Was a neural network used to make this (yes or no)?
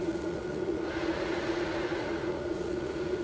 yes